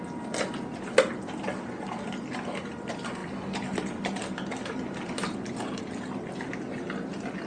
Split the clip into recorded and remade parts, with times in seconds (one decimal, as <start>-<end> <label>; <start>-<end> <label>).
0.0-7.5 recorded

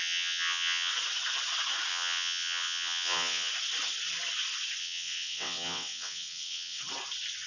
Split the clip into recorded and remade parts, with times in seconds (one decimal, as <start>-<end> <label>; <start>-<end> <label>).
0.0-0.9 remade; 0.9-1.9 recorded; 1.9-3.5 remade; 3.5-4.8 recorded; 4.8-6.8 remade; 6.8-7.5 recorded

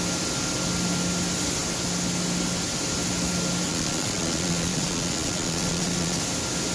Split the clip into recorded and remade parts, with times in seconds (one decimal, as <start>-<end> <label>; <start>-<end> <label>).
0.0-3.7 recorded; 3.7-6.2 remade; 6.2-6.7 recorded

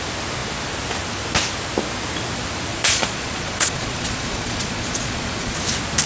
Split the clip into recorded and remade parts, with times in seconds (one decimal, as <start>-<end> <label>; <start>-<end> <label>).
0.0-2.7 recorded; 2.7-5.6 remade; 5.6-6.1 recorded